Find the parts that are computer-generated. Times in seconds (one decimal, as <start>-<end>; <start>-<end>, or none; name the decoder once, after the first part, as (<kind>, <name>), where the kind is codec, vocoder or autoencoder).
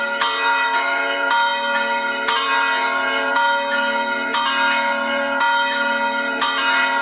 0.0-7.0 (vocoder, Vocos)